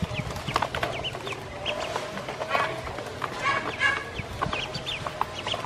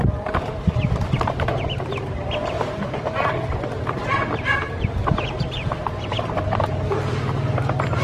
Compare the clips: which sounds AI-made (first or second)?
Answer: second